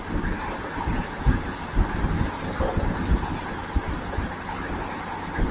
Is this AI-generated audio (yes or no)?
no